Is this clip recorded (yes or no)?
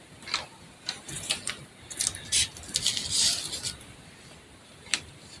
yes